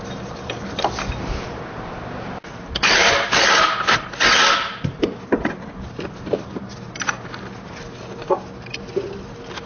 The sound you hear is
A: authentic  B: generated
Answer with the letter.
A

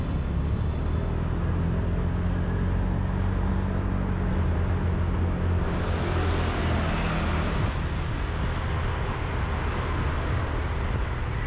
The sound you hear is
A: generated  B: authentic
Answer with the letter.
B